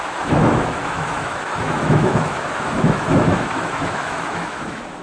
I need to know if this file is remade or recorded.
remade